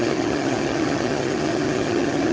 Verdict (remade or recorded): remade